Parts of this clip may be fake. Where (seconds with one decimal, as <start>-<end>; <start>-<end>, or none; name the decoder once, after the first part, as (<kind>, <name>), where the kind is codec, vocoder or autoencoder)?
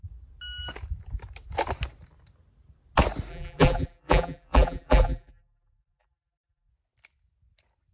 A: 3.3-6.7 (vocoder, BigVGAN v2)